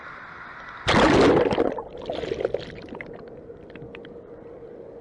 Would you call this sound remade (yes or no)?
no